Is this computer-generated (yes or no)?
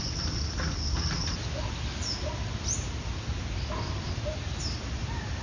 no